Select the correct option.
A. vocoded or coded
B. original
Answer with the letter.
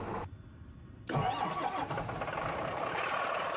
B